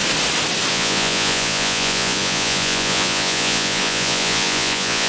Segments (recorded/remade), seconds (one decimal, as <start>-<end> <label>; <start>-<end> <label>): 0.0-0.7 recorded; 0.7-5.1 remade

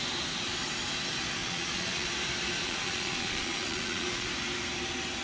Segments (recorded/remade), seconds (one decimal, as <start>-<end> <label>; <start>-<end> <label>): 0.0-1.4 recorded; 1.4-2.1 remade; 2.1-2.6 recorded; 2.6-4.3 remade; 4.3-5.2 recorded

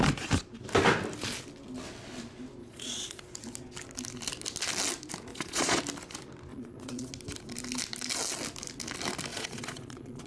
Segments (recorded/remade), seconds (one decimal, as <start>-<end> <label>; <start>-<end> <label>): 0.0-2.6 recorded; 2.6-3.2 remade; 3.2-5.3 recorded; 5.3-5.8 remade; 5.8-6.5 recorded; 6.5-7.1 remade; 7.1-9.3 recorded; 9.3-10.3 remade

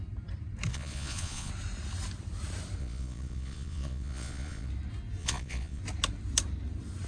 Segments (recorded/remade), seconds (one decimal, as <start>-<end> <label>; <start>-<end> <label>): 0.0-0.7 recorded; 0.7-1.5 remade; 1.5-2.8 recorded; 2.8-4.7 remade; 4.7-5.2 recorded; 5.2-5.8 remade; 5.8-7.1 recorded

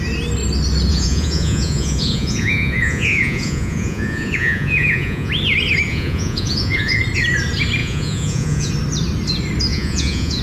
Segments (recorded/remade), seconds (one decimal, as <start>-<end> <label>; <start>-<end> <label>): 0.0-0.9 recorded; 0.9-5.3 remade; 5.3-5.9 recorded; 5.9-7.0 remade; 7.0-7.8 recorded; 7.8-8.7 remade; 8.7-9.7 recorded; 9.7-10.4 remade